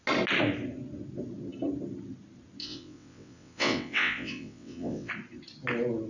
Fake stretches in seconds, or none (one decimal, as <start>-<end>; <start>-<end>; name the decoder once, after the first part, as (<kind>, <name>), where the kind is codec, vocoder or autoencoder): 2.6-5.1 (vocoder, WaveNeXt)